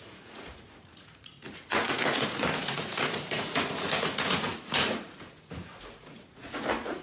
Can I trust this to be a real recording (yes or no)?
no